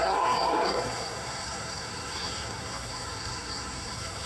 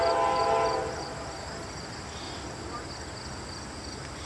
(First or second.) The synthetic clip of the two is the first